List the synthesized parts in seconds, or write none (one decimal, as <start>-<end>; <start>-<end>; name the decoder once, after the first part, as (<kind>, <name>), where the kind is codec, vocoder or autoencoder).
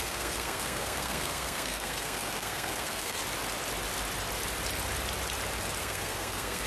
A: 0.0-3.2 (codec, SNAC); 5.8-6.7